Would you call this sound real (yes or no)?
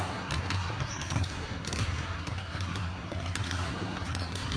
no